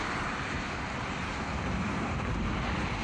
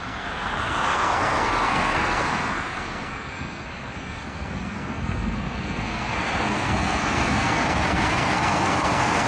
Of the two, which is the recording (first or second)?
first